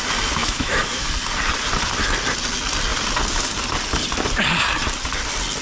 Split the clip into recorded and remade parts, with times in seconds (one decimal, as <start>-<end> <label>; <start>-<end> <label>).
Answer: 0.0-0.4 recorded; 0.4-1.1 remade; 1.1-5.6 recorded